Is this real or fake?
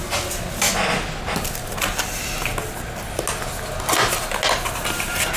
real